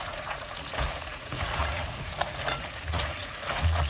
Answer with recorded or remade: remade